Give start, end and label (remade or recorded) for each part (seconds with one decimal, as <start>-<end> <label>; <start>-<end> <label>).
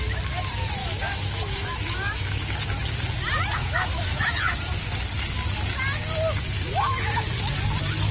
0.0-0.8 recorded; 0.8-2.4 remade; 2.4-3.6 recorded; 3.6-4.3 remade; 4.3-6.7 recorded; 6.7-7.3 remade; 7.3-8.1 recorded